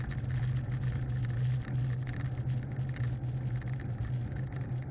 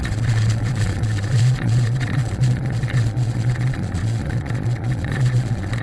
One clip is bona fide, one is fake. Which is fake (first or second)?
second